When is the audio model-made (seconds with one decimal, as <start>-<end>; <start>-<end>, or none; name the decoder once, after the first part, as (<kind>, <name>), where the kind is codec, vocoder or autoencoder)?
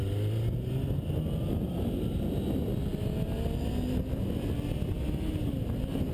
none